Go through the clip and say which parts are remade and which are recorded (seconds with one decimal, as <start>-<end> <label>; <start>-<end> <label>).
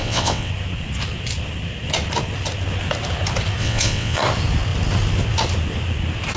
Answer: 0.0-0.5 remade; 0.5-3.6 recorded; 3.6-4.2 remade; 4.2-6.4 recorded